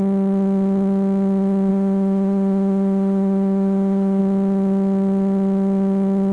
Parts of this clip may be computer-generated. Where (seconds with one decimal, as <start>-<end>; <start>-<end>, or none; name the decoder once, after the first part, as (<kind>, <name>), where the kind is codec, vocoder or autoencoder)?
1.7-4.2 (autoencoder, DAC-VAE)